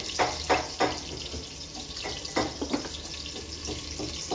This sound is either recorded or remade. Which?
recorded